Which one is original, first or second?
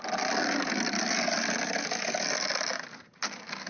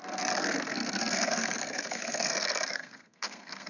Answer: first